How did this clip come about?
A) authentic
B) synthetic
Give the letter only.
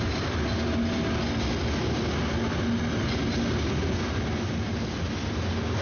A